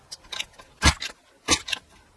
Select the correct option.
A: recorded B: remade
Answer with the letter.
A